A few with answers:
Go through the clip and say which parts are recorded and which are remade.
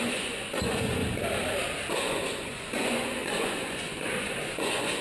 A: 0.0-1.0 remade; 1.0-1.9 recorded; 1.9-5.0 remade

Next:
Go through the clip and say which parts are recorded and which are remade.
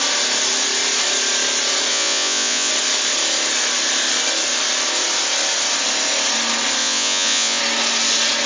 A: 0.0-1.9 recorded; 1.9-2.7 remade; 2.7-6.8 recorded; 6.8-7.6 remade; 7.6-8.5 recorded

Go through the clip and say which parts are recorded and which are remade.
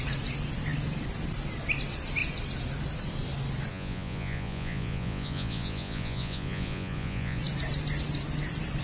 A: 0.0-3.7 recorded; 3.7-7.4 remade; 7.4-8.8 recorded